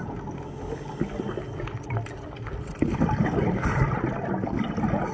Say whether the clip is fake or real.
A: real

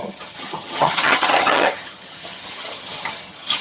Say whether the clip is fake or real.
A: fake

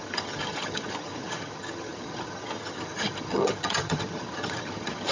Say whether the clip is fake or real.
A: fake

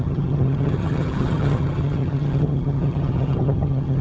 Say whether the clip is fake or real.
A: fake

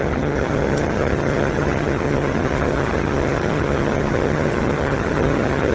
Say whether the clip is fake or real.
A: fake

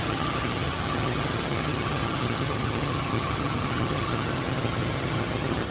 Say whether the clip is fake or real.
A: fake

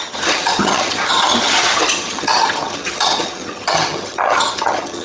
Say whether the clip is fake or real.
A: fake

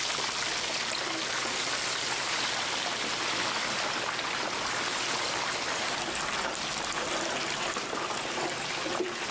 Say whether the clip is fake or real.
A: real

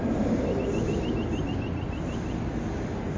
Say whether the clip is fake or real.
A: real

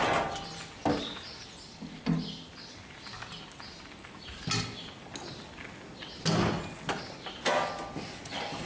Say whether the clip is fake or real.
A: real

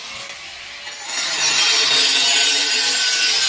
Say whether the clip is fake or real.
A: real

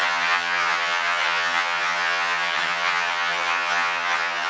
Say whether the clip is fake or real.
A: fake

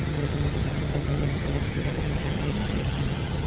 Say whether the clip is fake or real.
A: fake